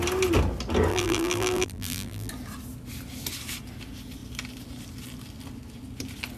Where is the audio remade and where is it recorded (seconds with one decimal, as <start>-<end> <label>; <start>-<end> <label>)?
0.0-0.9 recorded; 0.9-2.3 remade; 2.3-6.4 recorded